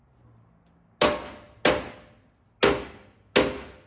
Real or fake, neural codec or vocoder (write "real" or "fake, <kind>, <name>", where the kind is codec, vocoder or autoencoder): real